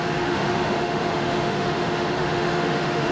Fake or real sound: fake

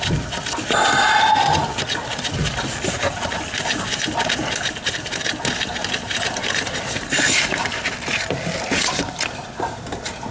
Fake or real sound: real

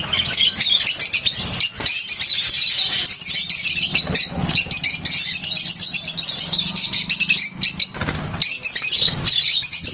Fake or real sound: real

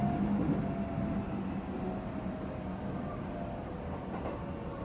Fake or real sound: real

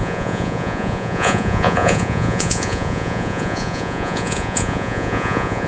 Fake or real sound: fake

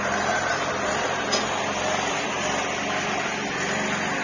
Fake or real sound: real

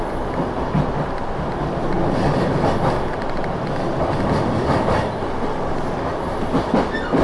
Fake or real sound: real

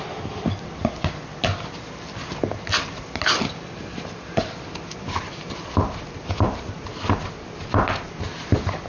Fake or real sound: real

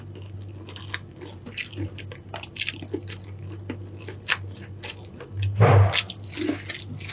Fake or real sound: real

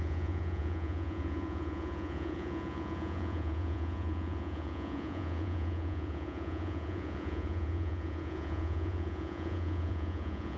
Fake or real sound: fake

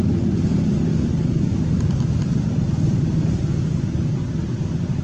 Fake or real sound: real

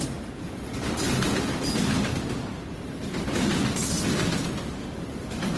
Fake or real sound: real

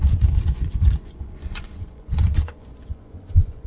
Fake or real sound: fake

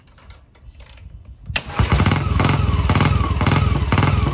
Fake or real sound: real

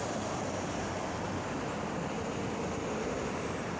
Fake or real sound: real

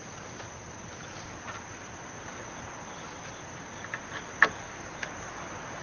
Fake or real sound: fake